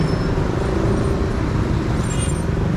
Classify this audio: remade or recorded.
recorded